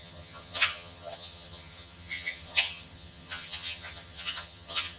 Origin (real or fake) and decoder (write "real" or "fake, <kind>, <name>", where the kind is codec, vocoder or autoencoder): fake, vocoder, HiFi-GAN